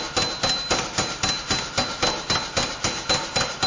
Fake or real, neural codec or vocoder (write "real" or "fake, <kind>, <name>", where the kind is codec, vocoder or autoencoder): real